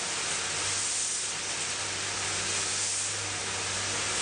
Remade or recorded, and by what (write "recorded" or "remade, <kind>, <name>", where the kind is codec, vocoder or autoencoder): recorded